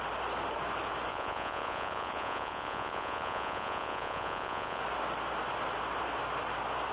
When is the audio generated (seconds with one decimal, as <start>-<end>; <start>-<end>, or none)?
1.1-4.8